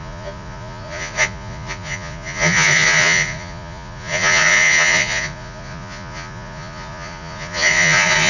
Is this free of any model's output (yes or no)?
no